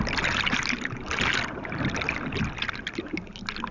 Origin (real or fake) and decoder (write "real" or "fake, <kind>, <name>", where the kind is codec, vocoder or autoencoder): real